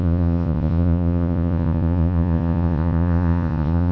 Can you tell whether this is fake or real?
fake